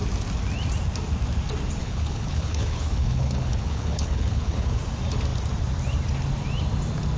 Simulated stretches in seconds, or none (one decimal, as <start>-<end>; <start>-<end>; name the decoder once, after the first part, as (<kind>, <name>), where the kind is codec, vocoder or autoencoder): 1.8-4.8 (codec, HILCodec)